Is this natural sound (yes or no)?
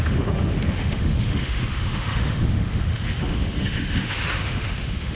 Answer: no